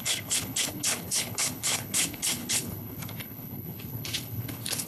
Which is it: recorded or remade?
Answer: remade